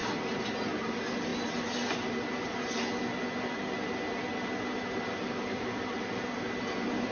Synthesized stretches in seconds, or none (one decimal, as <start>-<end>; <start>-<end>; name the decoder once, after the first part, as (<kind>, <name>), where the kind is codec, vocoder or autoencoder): none